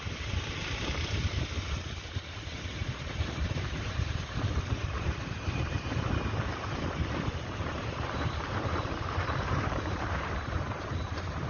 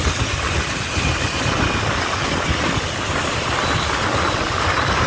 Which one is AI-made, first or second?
first